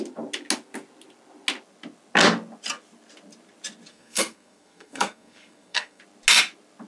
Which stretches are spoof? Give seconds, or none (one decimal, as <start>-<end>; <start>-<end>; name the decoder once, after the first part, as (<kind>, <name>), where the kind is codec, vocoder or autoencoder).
3.9-6.0 (codec, SNAC)